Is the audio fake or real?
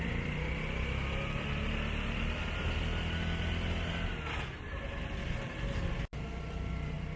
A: real